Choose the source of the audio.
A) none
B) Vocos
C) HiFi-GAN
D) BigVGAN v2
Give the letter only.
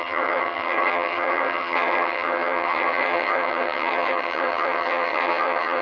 C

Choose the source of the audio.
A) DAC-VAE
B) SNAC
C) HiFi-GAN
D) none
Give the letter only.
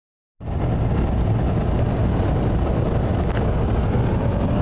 D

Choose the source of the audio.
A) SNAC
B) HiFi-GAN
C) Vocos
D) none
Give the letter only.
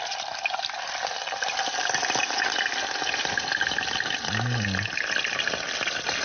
D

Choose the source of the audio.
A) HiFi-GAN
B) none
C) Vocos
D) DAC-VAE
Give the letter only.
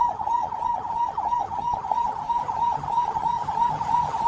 A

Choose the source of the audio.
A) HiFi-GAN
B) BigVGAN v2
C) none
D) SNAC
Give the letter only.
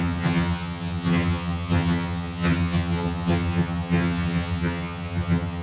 A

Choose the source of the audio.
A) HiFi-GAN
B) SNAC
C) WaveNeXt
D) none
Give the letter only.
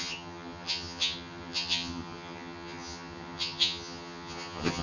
A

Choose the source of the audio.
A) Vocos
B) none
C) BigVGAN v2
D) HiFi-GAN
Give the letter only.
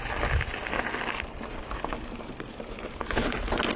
B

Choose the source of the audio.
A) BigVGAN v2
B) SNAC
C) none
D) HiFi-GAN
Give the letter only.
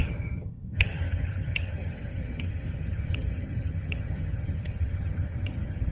D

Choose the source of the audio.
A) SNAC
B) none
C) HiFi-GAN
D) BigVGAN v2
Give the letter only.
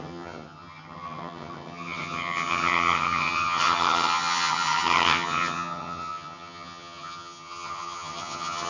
C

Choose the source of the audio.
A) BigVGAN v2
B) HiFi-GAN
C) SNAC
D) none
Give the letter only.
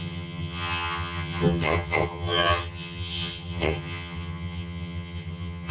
B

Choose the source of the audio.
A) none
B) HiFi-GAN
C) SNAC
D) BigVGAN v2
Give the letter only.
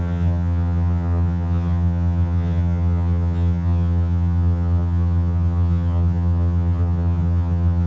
B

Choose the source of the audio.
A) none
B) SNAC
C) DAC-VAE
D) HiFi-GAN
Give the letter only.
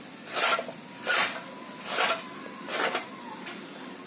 A